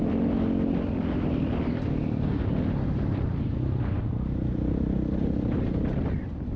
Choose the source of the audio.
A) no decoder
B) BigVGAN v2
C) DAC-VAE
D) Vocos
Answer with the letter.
A